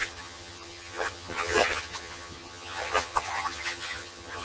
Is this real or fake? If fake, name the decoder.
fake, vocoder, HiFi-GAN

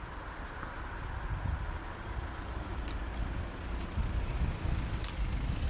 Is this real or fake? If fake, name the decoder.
real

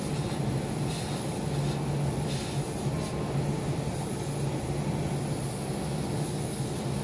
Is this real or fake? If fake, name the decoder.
real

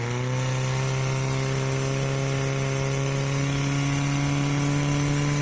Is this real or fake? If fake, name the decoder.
real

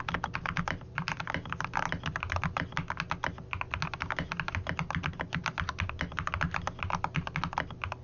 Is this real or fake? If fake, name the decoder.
real